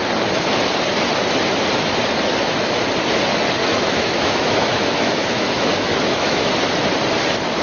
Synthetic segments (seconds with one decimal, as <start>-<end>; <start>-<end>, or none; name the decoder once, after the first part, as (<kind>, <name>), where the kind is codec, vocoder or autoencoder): 3.6-6.5 (autoencoder, DAC-VAE)